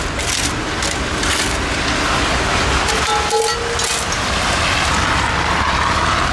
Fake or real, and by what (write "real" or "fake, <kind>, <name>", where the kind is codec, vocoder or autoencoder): real